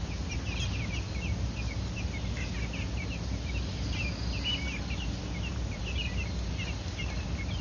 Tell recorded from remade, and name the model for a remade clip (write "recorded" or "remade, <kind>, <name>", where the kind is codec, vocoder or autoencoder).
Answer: recorded